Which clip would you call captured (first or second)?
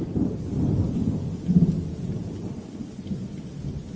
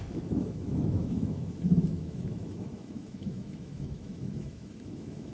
first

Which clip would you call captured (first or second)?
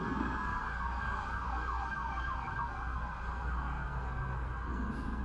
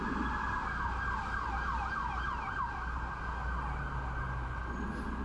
second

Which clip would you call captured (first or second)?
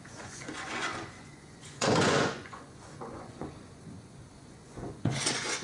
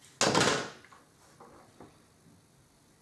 second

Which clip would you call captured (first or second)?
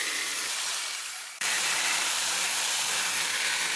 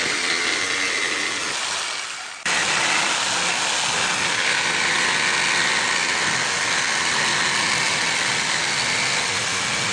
second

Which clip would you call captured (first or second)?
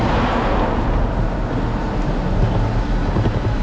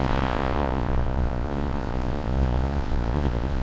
first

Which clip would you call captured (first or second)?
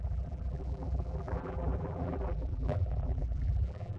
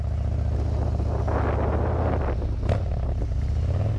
second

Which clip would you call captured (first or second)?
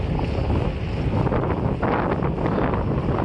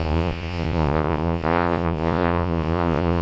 first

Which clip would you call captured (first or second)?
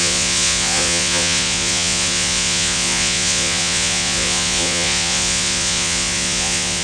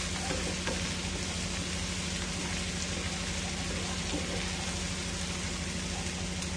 second